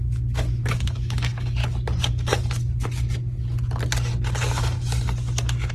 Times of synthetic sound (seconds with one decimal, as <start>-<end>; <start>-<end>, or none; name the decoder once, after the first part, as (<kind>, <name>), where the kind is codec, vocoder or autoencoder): 0.0-1.6 (codec, DAC); 2.1-2.6; 4.4-5.7